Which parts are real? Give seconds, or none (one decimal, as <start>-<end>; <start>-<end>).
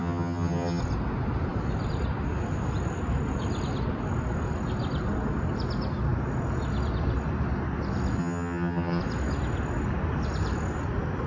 0.8-8.2; 9.0-11.3